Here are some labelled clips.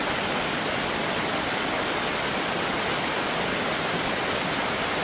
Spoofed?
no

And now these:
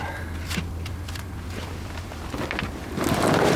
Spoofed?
yes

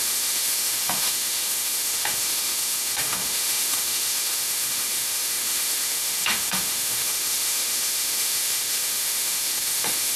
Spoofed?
yes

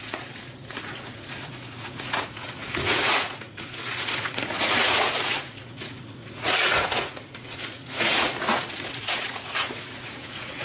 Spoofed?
yes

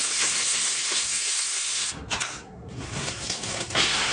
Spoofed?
yes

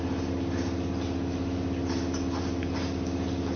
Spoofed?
no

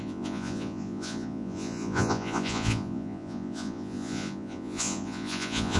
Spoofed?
yes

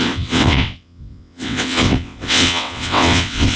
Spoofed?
yes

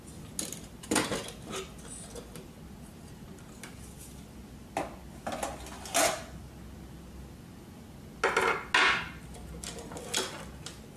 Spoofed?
no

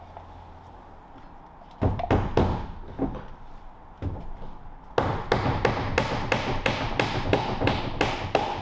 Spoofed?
no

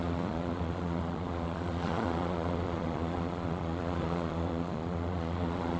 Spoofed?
yes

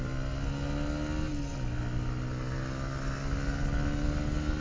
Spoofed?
no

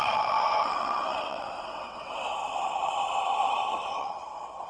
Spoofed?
yes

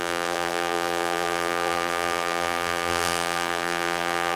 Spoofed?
yes